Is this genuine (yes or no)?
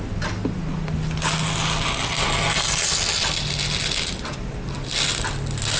yes